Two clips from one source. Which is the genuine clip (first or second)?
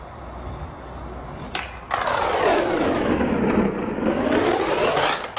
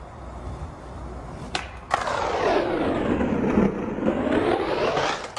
first